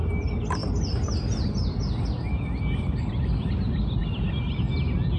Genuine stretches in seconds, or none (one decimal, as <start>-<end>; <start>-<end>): 0.0-5.2